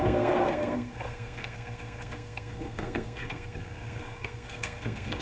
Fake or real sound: fake